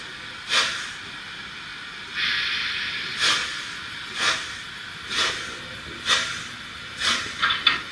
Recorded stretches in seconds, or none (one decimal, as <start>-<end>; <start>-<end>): 0.0-7.9